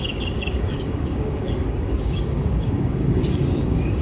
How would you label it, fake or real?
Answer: fake